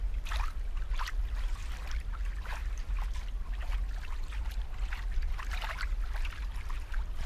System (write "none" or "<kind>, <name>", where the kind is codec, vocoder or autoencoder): none